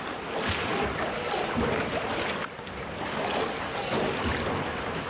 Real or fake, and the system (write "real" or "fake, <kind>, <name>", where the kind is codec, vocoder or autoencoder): real